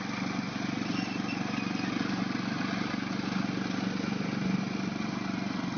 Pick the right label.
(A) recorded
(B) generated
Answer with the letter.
A